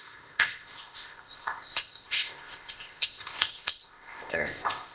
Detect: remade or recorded remade